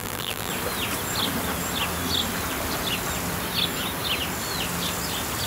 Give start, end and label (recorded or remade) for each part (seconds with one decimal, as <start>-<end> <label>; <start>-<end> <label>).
0.0-0.5 remade; 0.5-5.5 recorded